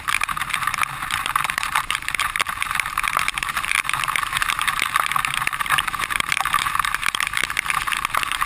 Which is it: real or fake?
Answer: fake